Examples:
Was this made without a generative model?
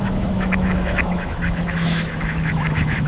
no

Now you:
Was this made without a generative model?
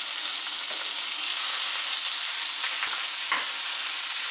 yes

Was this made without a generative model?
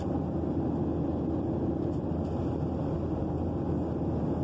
yes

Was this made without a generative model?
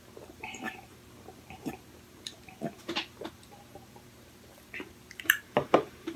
no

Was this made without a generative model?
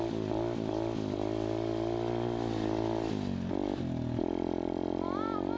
yes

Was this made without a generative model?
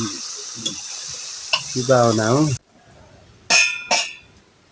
yes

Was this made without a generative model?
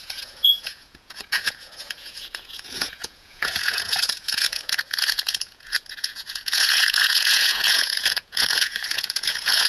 no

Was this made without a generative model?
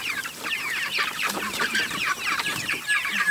no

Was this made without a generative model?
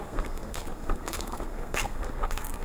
no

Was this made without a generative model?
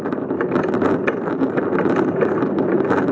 yes